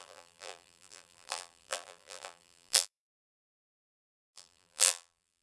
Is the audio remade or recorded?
remade